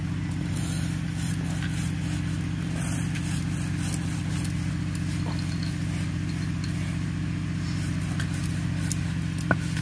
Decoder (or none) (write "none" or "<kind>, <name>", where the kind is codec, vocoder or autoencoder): none